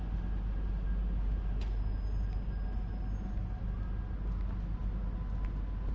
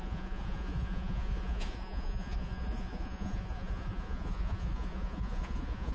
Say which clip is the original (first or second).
first